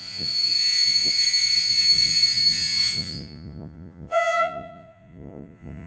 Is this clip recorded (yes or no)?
no